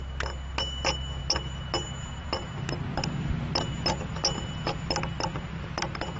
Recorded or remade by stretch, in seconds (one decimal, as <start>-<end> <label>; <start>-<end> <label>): 0.0-6.2 recorded